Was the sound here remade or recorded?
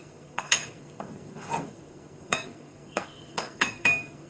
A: remade